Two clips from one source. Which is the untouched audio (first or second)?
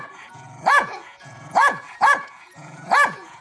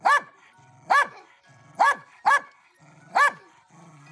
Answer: second